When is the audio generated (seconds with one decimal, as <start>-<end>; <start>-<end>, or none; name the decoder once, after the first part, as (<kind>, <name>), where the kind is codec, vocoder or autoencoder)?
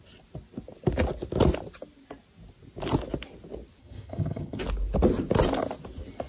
3.8-4.6 (vocoder, HiFi-GAN)